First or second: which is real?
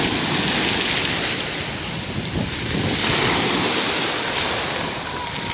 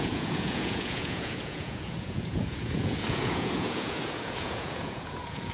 first